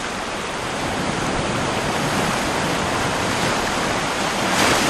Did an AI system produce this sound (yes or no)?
no